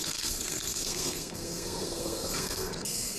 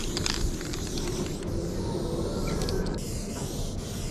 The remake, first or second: first